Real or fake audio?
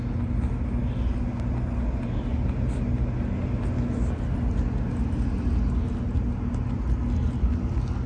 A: real